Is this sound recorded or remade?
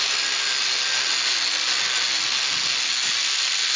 recorded